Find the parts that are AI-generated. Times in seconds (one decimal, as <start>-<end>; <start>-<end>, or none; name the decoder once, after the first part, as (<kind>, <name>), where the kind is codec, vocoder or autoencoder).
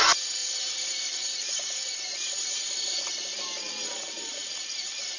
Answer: 0.0-5.2 (vocoder, BigVGAN v2)